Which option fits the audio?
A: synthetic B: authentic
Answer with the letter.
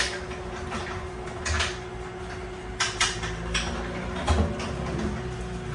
B